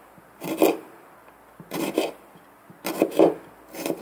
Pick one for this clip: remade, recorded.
recorded